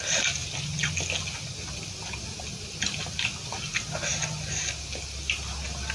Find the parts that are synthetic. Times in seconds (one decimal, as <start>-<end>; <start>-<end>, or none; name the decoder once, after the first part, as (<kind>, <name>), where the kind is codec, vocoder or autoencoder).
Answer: none